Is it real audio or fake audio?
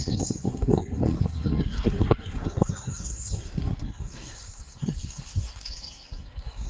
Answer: fake